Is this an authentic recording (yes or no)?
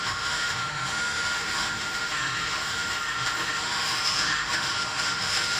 no